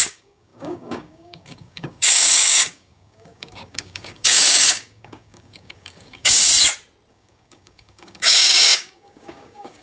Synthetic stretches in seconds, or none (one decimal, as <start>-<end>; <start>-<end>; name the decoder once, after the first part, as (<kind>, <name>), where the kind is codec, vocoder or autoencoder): 0.0-6.5 (codec, DAC); 7.1-9.8